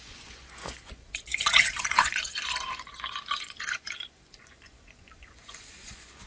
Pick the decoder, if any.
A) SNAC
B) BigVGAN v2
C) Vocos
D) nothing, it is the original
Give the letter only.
C